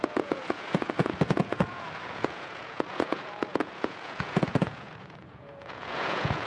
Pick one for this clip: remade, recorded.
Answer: remade